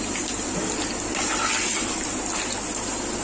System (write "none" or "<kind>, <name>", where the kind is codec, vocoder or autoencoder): none